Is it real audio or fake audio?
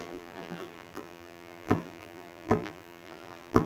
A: fake